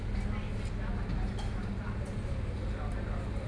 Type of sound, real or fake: real